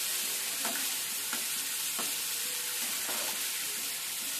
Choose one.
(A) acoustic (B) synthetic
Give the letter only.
A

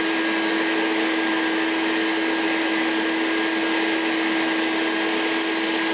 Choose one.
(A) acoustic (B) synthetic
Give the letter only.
A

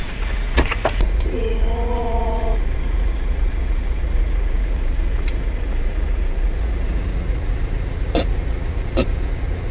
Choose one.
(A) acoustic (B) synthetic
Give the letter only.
B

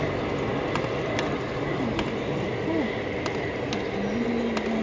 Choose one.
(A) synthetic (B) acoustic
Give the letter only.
B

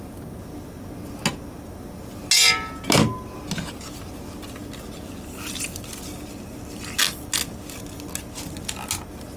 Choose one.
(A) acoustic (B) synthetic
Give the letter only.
A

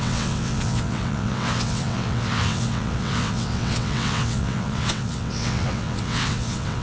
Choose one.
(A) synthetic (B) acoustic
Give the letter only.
A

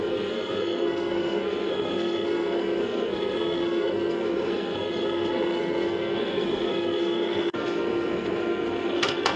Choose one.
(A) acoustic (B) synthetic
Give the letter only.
B